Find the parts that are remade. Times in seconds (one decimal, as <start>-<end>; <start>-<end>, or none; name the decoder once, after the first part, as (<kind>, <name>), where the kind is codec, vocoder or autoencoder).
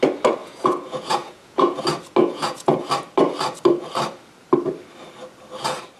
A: 0.4-1.8 (vocoder, Vocos); 2.2-2.9